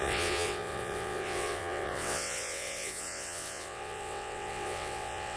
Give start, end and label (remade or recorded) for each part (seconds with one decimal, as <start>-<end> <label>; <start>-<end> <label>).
0.0-5.4 remade